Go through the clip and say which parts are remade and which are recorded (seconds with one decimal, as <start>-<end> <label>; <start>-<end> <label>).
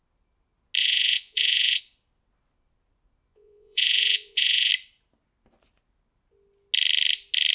0.0-0.8 recorded; 0.8-1.8 remade; 1.8-3.3 recorded; 3.3-4.7 remade; 4.7-7.5 recorded